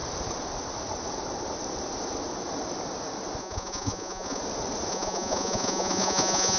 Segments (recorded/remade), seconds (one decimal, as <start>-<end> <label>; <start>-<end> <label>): 0.0-3.4 recorded; 3.4-4.4 remade; 4.4-4.9 recorded; 4.9-6.6 remade